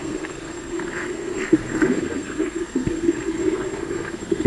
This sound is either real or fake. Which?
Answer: fake